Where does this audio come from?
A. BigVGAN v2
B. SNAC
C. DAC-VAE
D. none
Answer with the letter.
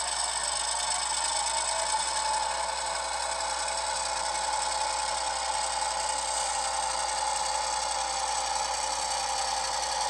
D